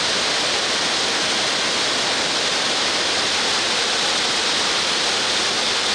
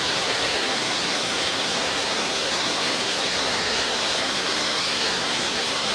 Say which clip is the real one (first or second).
first